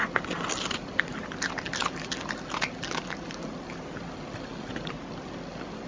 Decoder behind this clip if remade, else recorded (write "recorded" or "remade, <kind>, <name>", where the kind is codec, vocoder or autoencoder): recorded